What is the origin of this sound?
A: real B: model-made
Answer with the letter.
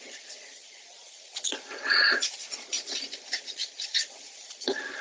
B